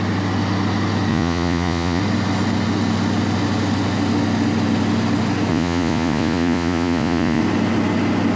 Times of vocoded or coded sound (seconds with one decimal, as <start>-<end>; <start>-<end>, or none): 1.1-2.0; 5.5-7.4